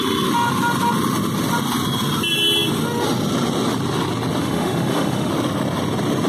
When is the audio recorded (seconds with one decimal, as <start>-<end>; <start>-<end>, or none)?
0.0-4.4; 5.3-6.3

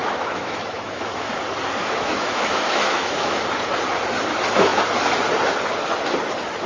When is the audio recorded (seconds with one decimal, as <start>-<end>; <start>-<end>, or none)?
1.3-1.8; 3.4-6.7

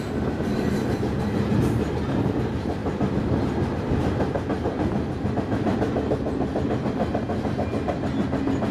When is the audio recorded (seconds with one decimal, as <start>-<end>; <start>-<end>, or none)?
0.0-8.7